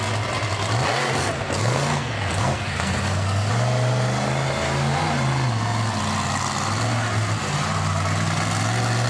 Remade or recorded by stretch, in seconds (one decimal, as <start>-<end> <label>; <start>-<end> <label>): 0.0-1.2 recorded; 1.2-3.5 remade; 3.5-9.1 recorded